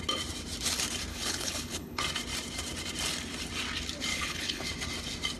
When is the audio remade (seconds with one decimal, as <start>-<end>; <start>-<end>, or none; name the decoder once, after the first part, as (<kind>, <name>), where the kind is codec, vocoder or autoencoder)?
1.1-2.0 (codec, HILCodec); 4.1-4.7